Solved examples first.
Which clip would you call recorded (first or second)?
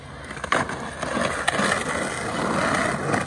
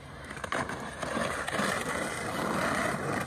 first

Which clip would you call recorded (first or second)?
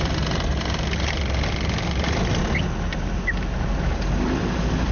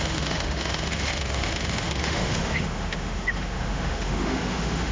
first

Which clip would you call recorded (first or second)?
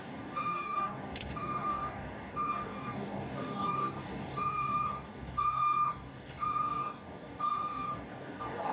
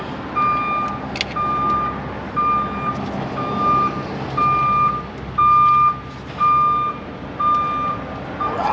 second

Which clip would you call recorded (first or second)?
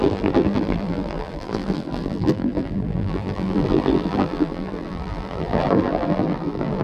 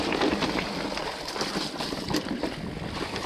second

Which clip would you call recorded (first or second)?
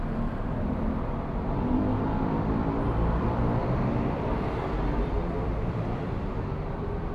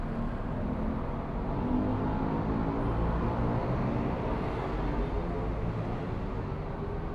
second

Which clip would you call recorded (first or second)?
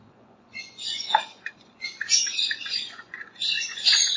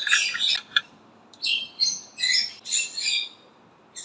second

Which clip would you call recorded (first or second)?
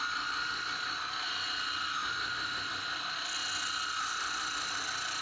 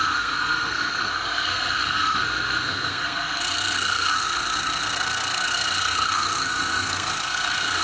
first